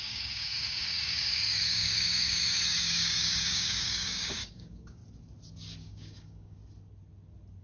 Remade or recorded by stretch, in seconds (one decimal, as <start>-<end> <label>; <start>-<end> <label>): 0.0-5.0 remade; 5.0-5.8 recorded; 5.8-6.6 remade; 6.6-7.6 recorded